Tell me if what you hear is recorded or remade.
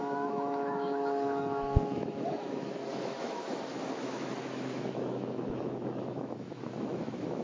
remade